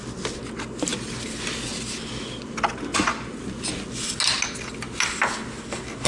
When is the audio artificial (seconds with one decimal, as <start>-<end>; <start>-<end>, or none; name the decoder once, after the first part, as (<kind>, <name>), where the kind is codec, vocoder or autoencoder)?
none